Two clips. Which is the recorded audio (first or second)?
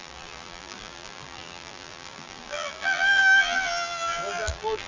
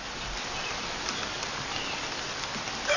second